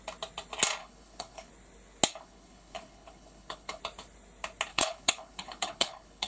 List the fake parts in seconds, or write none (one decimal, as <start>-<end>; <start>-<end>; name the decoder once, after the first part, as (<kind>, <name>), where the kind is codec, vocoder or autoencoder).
0.8-1.5 (codec, HILCodec); 2.1-3.8; 4.7-6.3